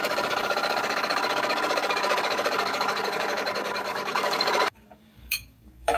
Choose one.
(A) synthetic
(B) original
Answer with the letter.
A